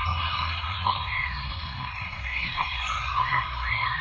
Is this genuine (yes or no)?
no